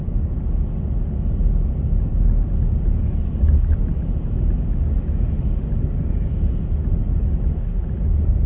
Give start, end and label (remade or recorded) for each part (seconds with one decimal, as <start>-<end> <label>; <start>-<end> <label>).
0.0-8.5 recorded

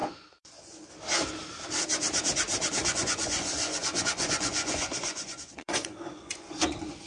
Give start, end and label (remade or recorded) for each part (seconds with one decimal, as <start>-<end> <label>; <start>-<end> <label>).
0.0-0.9 remade; 0.9-2.8 recorded; 2.8-7.1 remade

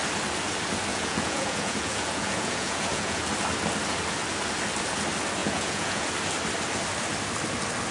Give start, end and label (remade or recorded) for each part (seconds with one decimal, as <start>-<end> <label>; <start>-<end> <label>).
0.0-0.9 recorded; 0.9-3.3 remade; 3.3-5.4 recorded; 5.4-6.1 remade; 6.1-7.9 recorded